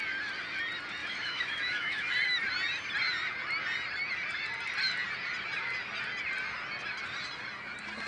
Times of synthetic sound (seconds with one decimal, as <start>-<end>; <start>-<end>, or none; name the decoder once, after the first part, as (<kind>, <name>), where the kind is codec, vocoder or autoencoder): 1.0-2.1 (autoencoder, DAC-VAE)

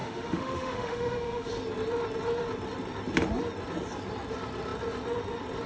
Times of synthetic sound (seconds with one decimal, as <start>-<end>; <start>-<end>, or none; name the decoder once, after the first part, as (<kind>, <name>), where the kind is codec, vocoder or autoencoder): 0.0-1.5 (autoencoder, DAC-VAE)

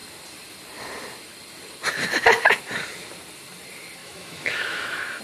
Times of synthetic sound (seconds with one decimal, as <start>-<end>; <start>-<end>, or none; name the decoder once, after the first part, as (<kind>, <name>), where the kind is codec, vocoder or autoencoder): 4.0-5.2 (autoencoder, DAC-VAE)

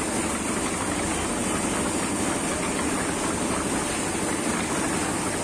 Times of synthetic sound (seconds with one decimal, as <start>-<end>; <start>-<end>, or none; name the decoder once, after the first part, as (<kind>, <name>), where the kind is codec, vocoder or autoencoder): none

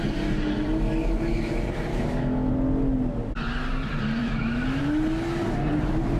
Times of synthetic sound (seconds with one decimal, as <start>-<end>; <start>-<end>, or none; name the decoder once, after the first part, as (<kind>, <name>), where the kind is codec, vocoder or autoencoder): 1.9-2.5 (autoencoder, DAC-VAE); 4.2-4.8

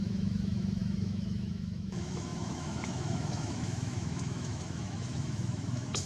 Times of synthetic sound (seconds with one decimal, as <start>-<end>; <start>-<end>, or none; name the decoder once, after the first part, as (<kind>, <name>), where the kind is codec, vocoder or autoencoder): 0.0-6.0 (autoencoder, DAC-VAE)

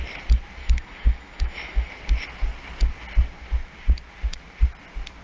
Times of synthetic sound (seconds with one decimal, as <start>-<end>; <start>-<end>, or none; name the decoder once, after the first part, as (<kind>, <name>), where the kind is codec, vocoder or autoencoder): 0.6-1.9 (autoencoder, DAC-VAE)

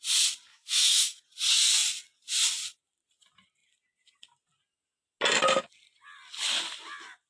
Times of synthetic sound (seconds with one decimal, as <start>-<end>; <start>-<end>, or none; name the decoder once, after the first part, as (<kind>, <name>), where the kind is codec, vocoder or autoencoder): 0.5-1.2 (autoencoder, DAC-VAE)